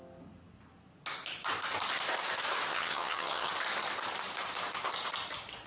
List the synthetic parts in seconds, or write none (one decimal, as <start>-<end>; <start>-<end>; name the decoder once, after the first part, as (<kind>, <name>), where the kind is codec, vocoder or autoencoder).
2.7-3.5 (vocoder, HiFi-GAN)